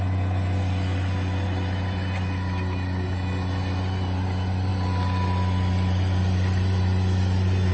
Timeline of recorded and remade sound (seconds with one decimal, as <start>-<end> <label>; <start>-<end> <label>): 0.0-7.7 recorded